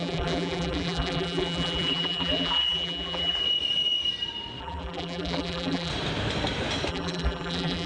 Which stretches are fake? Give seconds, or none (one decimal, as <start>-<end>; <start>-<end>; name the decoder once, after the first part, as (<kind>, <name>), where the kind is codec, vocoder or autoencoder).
0.0-3.4 (vocoder, BigVGAN v2); 4.6-5.9; 6.9-7.9